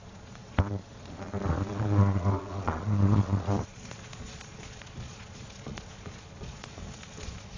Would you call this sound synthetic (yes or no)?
yes